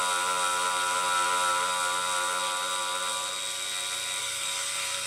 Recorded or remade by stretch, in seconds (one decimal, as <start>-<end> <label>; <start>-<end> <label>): 0.0-4.2 recorded; 4.2-5.1 remade